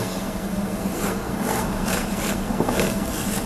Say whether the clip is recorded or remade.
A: remade